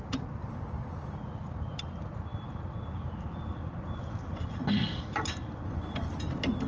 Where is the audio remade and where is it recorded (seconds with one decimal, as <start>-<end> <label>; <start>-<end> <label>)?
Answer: 0.0-6.7 recorded